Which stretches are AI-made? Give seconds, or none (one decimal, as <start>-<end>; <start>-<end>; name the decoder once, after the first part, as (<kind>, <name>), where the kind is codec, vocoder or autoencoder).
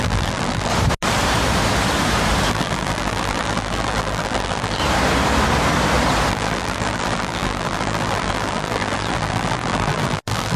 0.0-0.7 (vocoder, BigVGAN v2); 2.5-4.8; 6.3-10.6